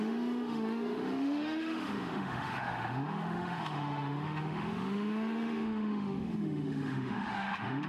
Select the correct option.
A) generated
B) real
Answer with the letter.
A